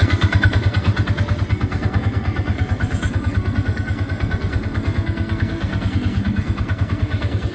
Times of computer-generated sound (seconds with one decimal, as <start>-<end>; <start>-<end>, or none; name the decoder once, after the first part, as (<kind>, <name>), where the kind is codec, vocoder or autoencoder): 0.0-0.9 (codec, SNAC); 1.5-7.5